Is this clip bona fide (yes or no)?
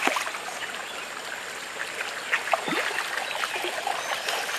yes